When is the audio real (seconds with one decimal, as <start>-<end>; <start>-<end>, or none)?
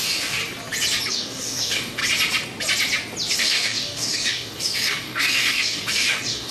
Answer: 0.4-1.1; 2.0-3.3